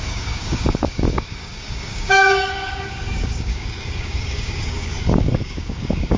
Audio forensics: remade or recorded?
remade